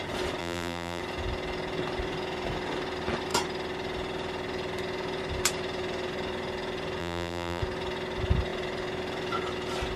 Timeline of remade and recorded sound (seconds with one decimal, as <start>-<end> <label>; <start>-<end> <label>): 0.0-0.4 recorded; 0.4-1.0 remade; 1.0-7.0 recorded; 7.0-7.6 remade; 7.6-10.0 recorded